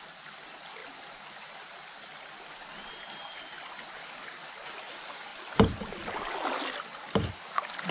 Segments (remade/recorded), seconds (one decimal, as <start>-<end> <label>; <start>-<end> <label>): 0.0-7.9 recorded